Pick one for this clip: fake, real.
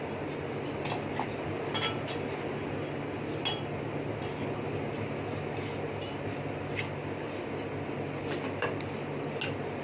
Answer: real